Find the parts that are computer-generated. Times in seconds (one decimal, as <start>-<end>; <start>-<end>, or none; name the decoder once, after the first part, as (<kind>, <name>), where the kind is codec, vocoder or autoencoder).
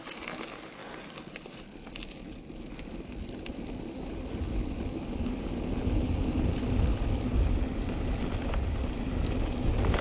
none